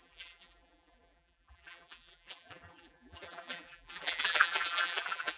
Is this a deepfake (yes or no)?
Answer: yes